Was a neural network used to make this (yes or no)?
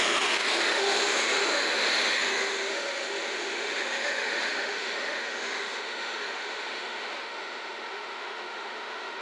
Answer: yes